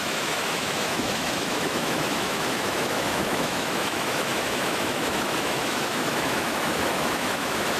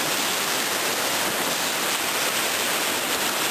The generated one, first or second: first